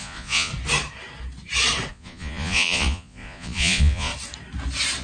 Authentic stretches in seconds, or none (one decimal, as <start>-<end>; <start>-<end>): 0.5-1.9; 4.1-5.0